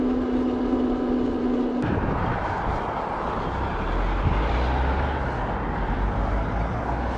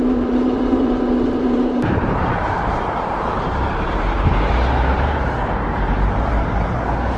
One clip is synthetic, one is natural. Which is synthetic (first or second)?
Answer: second